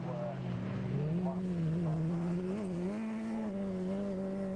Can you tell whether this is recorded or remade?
recorded